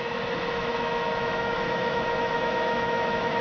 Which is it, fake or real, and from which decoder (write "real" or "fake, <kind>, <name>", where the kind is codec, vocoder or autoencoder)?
fake, autoencoder, DAC-VAE